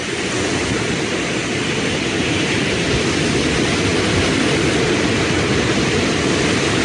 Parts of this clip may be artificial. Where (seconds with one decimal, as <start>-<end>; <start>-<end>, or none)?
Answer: 0.0-0.6